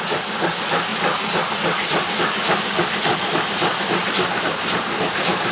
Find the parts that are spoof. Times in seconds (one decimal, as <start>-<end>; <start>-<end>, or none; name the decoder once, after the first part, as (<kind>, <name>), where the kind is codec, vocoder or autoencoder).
4.0-4.5 (vocoder, BigVGAN v2)